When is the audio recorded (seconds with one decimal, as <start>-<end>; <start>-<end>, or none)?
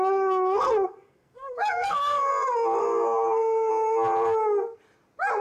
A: 2.3-2.8; 3.7-5.4